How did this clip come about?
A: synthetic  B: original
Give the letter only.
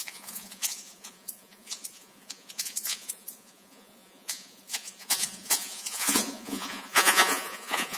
A